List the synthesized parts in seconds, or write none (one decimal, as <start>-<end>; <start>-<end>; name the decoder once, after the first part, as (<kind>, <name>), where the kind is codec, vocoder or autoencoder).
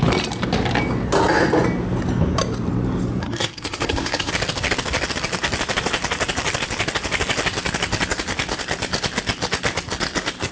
3.2-4.3 (codec, SNAC)